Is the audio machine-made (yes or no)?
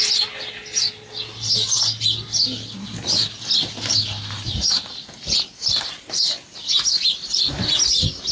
no